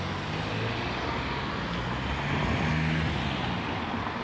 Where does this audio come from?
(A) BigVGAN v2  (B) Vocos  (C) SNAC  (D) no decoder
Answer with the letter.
D